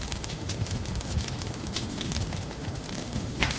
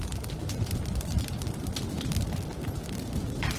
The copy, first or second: first